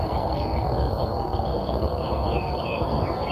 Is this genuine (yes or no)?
no